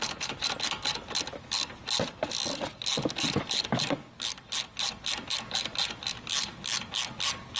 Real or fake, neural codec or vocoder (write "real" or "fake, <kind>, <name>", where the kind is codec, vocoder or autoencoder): real